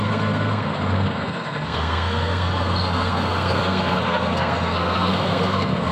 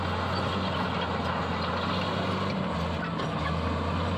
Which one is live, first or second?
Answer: second